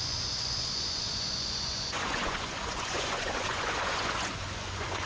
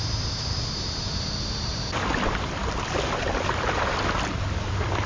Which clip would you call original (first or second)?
second